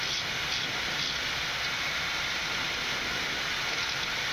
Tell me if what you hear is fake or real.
real